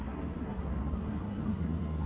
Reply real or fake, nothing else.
fake